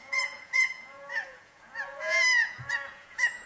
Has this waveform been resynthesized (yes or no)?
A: yes